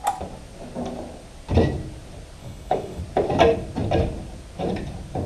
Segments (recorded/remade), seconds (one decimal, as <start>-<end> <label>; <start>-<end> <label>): 0.0-2.4 recorded; 2.4-3.0 remade; 3.0-5.3 recorded